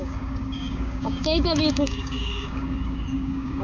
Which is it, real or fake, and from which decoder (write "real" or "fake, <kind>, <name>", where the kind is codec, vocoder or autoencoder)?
fake, codec, DAC